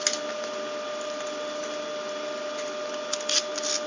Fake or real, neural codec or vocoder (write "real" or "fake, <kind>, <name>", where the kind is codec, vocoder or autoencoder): real